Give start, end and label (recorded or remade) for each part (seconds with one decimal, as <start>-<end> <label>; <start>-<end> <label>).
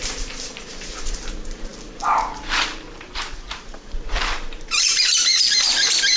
0.0-6.2 remade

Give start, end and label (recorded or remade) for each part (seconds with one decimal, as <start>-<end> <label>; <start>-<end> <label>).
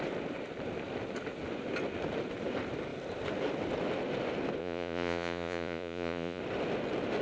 0.0-4.6 recorded; 4.6-6.4 remade; 6.4-7.2 recorded